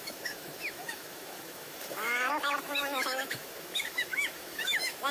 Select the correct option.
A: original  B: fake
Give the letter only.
B